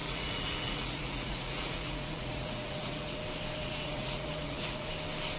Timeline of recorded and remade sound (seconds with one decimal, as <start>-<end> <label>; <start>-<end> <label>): 0.0-3.2 remade; 3.2-3.6 recorded; 3.6-4.9 remade; 4.9-5.4 recorded